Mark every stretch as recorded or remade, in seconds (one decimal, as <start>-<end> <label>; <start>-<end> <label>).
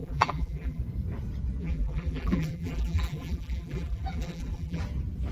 0.0-0.8 remade; 0.8-1.6 recorded; 1.6-4.8 remade; 4.8-5.3 recorded